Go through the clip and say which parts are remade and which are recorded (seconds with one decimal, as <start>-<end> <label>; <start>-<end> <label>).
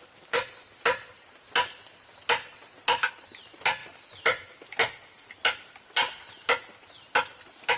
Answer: 0.0-7.8 recorded